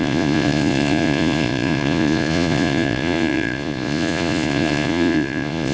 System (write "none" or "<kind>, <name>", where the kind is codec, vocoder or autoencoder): vocoder, Vocos